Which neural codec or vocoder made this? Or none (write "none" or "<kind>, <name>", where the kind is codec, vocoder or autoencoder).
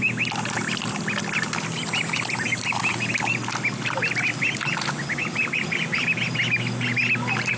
none